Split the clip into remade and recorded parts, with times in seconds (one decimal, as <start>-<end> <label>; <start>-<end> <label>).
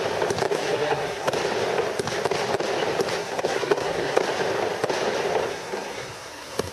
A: 0.0-0.5 recorded; 0.5-1.3 remade; 1.3-3.2 recorded; 3.2-4.2 remade; 4.2-5.5 recorded; 5.5-6.7 remade